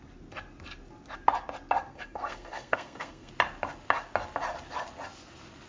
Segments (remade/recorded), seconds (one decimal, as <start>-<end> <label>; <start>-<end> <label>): 0.0-1.9 recorded; 1.9-3.3 remade; 3.3-5.7 recorded